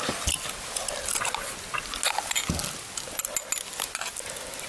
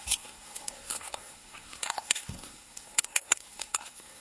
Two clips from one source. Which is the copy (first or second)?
second